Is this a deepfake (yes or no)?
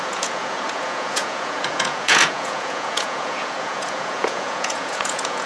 yes